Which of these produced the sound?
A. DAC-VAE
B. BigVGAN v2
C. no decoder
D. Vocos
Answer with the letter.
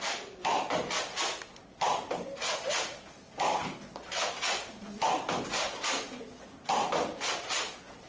C